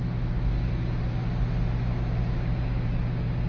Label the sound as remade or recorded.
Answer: recorded